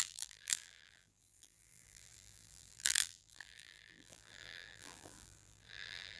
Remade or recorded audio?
remade